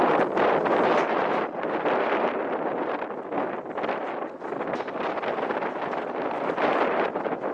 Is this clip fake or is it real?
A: fake